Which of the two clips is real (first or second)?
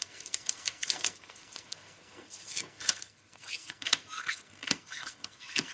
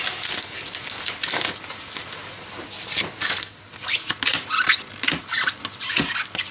second